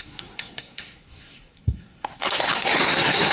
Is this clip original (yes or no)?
no